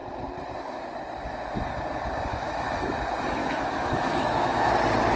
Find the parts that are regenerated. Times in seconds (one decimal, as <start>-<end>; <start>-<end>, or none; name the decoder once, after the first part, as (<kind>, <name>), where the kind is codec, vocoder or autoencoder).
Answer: 2.3-2.9 (autoencoder, DAC-VAE); 3.4-4.7